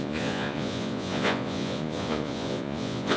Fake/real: fake